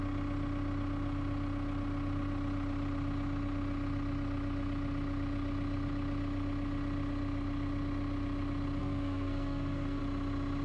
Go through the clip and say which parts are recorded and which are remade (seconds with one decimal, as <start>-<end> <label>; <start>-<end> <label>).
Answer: 0.0-8.8 recorded; 8.8-10.0 remade; 10.0-10.6 recorded